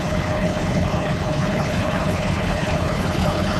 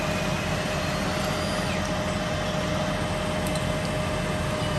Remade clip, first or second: first